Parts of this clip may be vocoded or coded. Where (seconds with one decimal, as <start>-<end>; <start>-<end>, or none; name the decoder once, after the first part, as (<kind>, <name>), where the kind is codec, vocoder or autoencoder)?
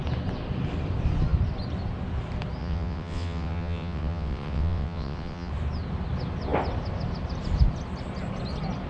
2.6-5.5 (vocoder, WaveNeXt)